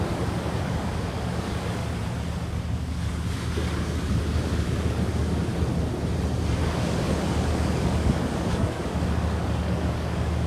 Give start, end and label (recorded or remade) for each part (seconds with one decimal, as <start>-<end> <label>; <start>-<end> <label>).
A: 0.0-1.8 remade; 1.8-2.5 recorded; 2.5-5.5 remade; 5.5-6.5 recorded; 6.5-10.5 remade